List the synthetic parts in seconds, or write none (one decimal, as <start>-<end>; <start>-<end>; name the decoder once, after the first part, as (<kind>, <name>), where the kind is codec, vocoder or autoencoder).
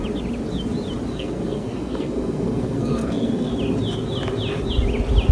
1.1-3.5 (codec, SNAC)